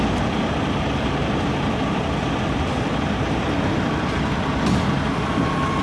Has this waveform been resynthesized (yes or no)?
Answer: no